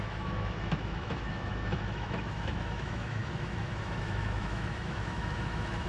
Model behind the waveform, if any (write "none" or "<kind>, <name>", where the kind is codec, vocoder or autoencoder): autoencoder, DAC-VAE